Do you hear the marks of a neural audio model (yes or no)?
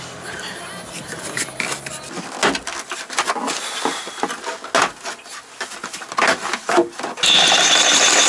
no